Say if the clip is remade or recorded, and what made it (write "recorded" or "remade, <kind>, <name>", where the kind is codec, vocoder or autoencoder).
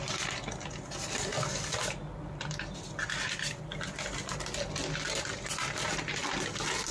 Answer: recorded